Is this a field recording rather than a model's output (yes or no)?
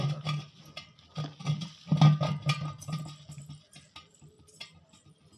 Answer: yes